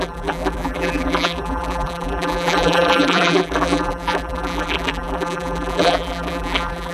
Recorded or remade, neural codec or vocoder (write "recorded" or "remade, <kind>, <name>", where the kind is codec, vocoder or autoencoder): remade, vocoder, BigVGAN v2